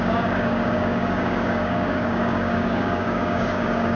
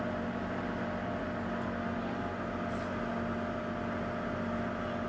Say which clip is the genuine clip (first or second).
second